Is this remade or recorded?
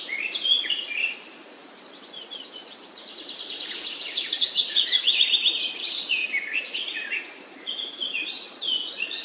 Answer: remade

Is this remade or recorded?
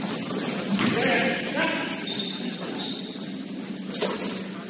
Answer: recorded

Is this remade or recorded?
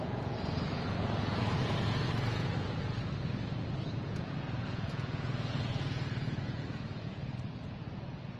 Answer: remade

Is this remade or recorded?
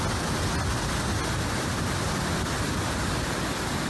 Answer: recorded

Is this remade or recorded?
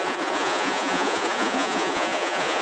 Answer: remade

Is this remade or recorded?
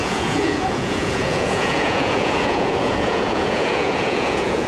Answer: remade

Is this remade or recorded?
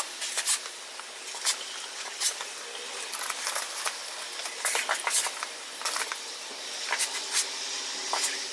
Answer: recorded